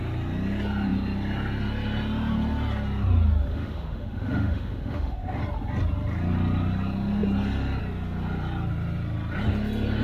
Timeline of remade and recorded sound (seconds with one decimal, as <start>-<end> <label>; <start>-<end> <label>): 0.0-3.5 recorded; 3.5-5.4 remade; 5.4-10.0 recorded